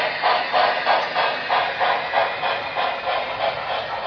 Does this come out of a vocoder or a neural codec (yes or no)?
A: no